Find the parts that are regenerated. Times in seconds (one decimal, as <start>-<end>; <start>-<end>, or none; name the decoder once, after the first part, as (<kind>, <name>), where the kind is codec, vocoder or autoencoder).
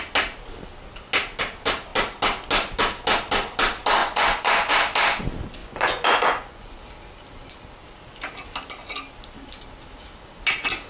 4.0-4.7 (vocoder, Vocos); 5.6-6.8